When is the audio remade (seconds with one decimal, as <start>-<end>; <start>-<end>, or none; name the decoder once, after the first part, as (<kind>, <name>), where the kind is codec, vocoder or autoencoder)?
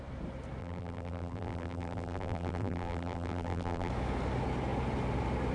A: 0.6-3.9 (vocoder, BigVGAN v2)